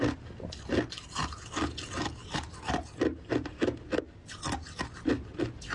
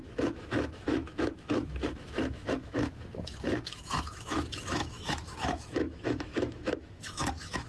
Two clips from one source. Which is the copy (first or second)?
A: second